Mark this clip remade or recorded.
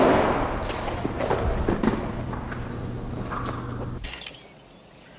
recorded